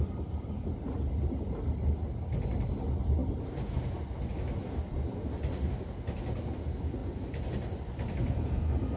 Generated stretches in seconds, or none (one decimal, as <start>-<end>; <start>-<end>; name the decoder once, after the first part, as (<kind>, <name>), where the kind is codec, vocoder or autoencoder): none